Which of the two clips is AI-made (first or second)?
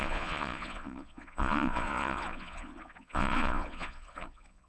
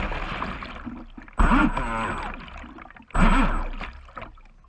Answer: first